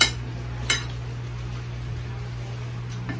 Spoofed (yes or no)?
no